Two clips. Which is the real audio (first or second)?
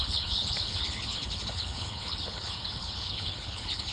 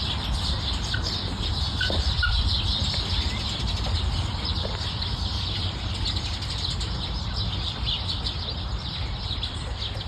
second